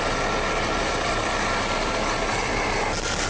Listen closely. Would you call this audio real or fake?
real